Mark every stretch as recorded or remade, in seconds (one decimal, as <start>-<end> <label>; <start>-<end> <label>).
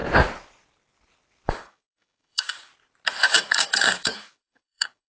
0.0-1.5 recorded; 1.5-2.7 remade; 2.7-3.2 recorded; 3.2-5.1 remade